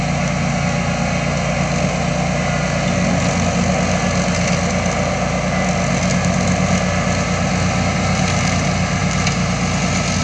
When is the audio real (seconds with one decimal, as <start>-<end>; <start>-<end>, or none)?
0.0-10.2